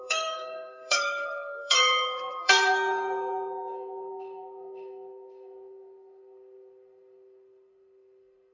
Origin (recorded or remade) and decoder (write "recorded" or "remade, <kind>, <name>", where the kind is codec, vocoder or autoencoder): remade, codec, SNAC